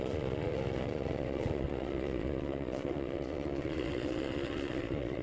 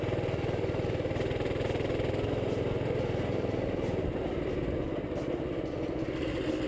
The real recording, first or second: second